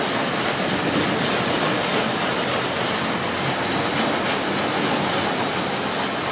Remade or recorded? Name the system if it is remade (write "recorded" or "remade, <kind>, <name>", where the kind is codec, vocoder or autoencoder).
recorded